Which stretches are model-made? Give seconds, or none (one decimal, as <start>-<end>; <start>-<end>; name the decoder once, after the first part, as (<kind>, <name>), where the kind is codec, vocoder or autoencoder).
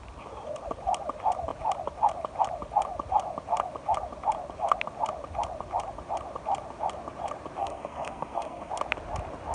7.6-8.7 (codec, SNAC)